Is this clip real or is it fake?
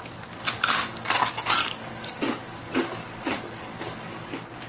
fake